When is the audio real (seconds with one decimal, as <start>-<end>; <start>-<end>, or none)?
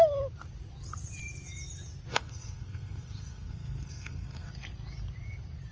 0.0-2.1; 4.5-5.7